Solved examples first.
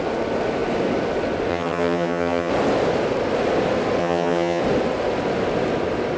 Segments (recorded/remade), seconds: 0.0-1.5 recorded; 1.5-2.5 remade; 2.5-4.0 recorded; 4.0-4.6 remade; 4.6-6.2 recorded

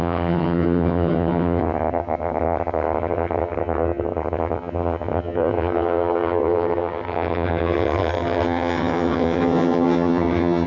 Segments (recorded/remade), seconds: 0.0-10.7 remade

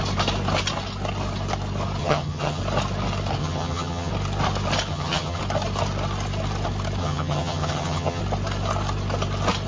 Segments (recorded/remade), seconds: 0.0-2.0 recorded; 2.0-2.6 remade; 2.6-3.4 recorded; 3.4-4.1 remade; 4.1-4.9 recorded; 4.9-5.4 remade; 5.4-7.0 recorded; 7.0-8.2 remade; 8.2-9.7 recorded

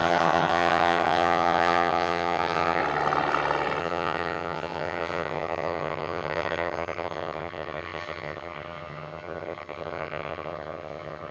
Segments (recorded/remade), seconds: 0.0-2.8 remade; 2.8-3.8 recorded; 3.8-11.3 remade

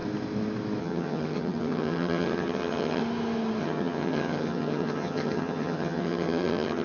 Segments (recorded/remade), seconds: 0.0-0.8 recorded; 0.8-3.0 remade; 3.0-3.6 recorded; 3.6-6.8 remade

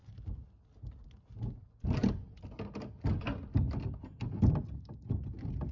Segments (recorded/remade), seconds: 0.0-5.7 recorded

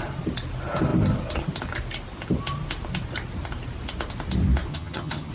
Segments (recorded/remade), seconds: 0.0-4.7 recorded; 4.7-5.3 remade